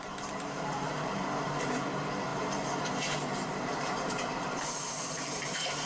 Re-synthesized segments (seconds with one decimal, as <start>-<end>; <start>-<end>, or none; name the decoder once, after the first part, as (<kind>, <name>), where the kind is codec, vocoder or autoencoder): 0.0-5.9 (vocoder, BigVGAN v2)